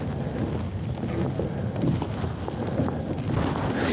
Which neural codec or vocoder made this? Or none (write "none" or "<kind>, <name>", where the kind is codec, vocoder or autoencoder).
none